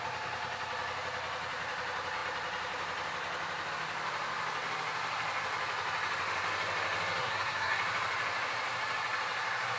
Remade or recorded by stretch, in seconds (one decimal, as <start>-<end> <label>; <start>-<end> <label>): 0.0-7.2 recorded; 7.2-7.8 remade; 7.8-9.8 recorded